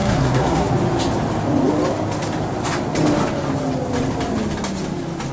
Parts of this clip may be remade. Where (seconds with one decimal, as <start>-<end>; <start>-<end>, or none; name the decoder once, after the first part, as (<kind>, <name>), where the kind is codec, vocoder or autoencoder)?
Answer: 0.0-0.7 (codec, SNAC)

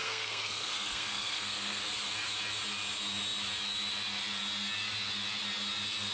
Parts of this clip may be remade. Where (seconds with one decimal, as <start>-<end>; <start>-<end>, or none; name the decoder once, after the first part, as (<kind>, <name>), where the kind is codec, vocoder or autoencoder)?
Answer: 0.0-1.8 (codec, SNAC)

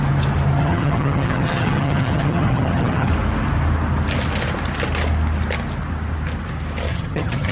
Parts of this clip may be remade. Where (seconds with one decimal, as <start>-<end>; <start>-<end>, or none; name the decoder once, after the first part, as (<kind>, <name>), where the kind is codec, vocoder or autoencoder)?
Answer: 0.6-3.1 (vocoder, HiFi-GAN); 6.9-7.5

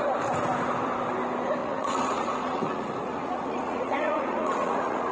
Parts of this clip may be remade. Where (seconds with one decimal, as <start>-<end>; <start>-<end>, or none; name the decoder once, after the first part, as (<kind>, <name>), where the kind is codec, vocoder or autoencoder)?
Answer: 1.6-5.1 (vocoder, Vocos)

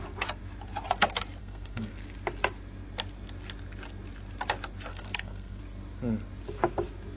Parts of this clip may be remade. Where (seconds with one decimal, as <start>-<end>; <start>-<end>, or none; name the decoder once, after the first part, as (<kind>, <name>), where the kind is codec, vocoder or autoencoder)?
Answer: 1.4-1.9 (codec, SNAC); 4.9-5.6

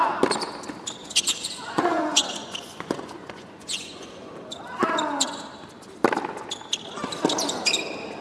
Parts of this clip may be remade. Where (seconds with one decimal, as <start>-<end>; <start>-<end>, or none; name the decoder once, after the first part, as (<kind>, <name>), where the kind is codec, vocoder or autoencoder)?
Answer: 1.0-4.3 (vocoder, Vocos)

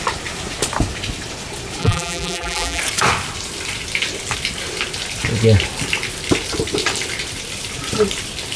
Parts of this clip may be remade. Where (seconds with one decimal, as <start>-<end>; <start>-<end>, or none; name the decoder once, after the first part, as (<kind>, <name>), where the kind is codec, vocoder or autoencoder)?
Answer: 1.8-2.8 (vocoder, BigVGAN v2)